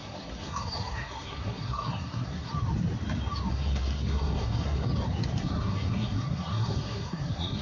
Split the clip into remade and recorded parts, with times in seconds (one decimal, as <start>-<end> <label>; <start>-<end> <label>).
0.0-2.5 remade; 2.5-3.5 recorded; 3.5-4.9 remade; 4.9-5.4 recorded; 5.4-7.6 remade